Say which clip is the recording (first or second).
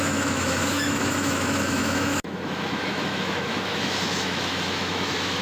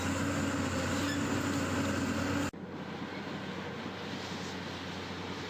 second